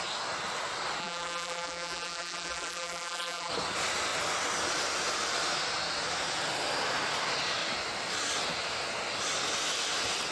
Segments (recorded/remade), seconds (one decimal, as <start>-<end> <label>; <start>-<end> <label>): 0.0-1.0 recorded; 1.0-3.5 remade; 3.5-10.3 recorded